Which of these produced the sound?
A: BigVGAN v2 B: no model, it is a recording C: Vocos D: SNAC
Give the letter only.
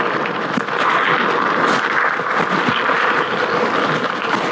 B